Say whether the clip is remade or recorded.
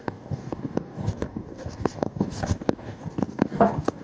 remade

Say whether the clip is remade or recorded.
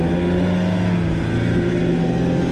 recorded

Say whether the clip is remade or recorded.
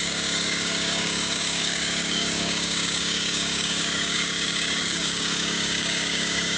remade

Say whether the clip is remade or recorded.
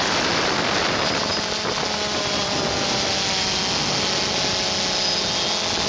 recorded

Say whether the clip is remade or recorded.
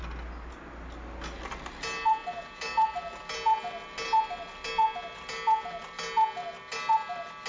recorded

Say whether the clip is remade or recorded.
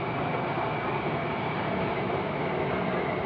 recorded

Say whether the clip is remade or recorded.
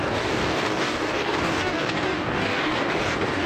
remade